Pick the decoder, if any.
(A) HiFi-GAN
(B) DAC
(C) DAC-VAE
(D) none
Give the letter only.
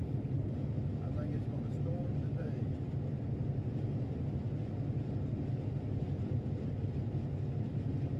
D